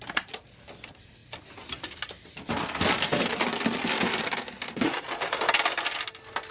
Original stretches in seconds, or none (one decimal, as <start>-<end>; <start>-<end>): 0.0-6.5